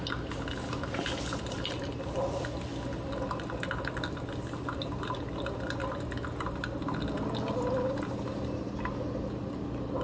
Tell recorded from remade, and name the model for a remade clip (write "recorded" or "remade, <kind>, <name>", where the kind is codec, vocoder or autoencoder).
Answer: recorded